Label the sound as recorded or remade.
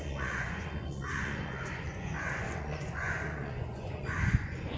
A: remade